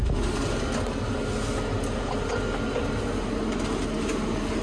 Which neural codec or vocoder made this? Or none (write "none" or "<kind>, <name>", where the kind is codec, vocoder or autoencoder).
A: none